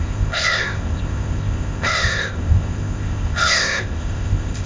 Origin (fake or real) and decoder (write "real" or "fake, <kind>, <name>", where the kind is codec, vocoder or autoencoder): fake, codec, ZipCodec